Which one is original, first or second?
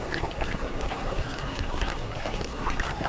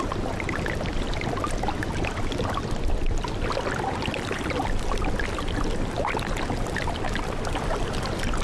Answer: second